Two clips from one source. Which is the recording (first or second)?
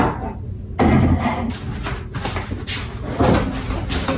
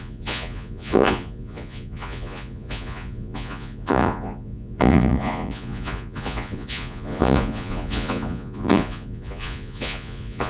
first